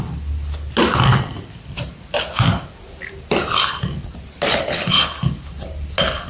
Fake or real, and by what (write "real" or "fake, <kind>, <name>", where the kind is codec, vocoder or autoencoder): real